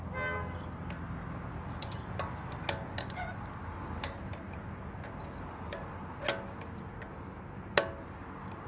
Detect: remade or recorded recorded